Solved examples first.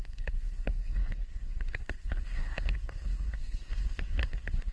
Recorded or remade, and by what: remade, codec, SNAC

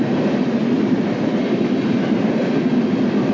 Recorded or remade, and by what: recorded